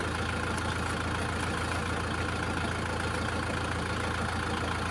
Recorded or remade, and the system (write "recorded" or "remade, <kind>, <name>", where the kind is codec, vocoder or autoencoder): recorded